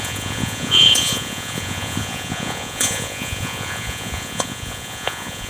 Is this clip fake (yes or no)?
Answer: yes